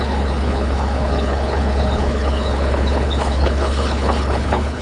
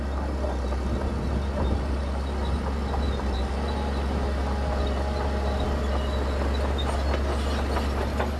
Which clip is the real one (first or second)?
second